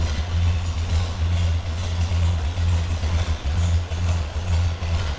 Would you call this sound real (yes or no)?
no